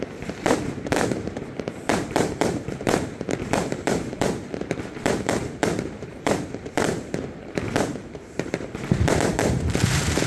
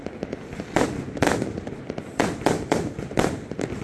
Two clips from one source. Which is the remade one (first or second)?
first